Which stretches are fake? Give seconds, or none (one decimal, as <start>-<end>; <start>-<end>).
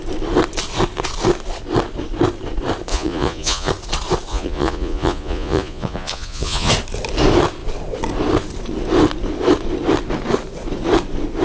2.9-3.7; 4.3-6.7